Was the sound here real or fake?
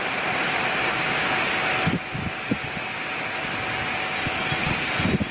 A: real